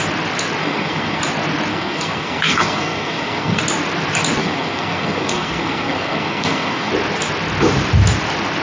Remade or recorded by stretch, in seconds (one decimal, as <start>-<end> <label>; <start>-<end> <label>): 0.0-0.6 recorded; 0.6-1.2 remade; 1.2-1.7 recorded; 1.7-3.6 remade; 3.6-4.4 recorded; 4.4-6.9 remade; 6.9-8.6 recorded